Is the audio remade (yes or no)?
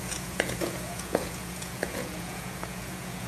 yes